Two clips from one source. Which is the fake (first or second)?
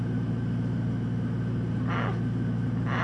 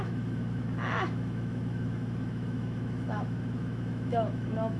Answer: second